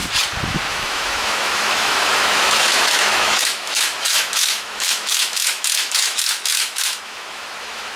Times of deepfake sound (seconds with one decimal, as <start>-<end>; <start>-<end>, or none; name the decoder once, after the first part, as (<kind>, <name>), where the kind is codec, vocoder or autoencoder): 0.7-8.0 (autoencoder, DAC-VAE)